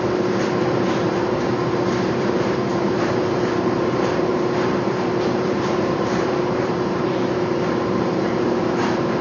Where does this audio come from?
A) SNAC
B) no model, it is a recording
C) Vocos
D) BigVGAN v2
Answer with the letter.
D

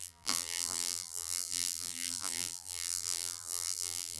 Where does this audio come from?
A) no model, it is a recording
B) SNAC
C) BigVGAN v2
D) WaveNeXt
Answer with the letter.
C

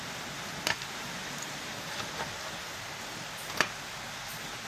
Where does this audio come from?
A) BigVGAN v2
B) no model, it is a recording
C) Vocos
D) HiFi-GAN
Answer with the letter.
B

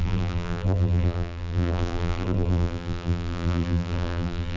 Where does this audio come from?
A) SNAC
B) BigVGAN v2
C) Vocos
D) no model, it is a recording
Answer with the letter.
B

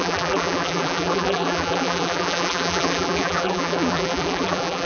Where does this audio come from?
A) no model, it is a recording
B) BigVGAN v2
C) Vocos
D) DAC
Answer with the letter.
B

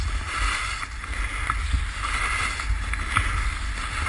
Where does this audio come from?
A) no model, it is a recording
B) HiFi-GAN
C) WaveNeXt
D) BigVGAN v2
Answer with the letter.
A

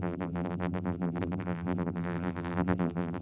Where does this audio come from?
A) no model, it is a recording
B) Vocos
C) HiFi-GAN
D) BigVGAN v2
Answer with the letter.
D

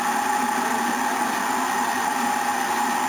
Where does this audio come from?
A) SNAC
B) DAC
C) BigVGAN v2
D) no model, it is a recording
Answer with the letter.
C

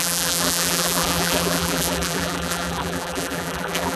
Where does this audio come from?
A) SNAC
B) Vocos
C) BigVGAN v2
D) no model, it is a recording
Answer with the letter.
C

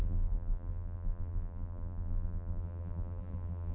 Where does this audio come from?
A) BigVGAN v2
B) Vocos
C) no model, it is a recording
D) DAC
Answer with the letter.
A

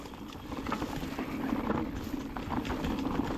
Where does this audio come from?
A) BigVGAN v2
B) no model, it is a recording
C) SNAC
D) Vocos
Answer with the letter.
B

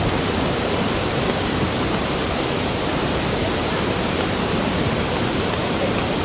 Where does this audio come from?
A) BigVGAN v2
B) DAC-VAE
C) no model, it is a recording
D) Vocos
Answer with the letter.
A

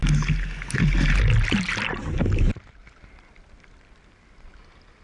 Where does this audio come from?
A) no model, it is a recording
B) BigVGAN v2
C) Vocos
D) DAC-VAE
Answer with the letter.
A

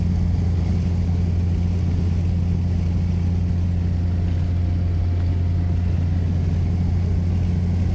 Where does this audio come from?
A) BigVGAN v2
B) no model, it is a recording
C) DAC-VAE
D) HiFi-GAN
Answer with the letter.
B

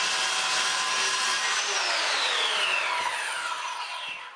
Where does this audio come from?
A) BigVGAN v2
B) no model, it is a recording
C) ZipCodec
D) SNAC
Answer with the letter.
B